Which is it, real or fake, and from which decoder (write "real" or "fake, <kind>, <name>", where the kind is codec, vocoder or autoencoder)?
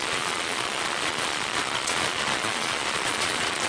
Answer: fake, vocoder, Vocos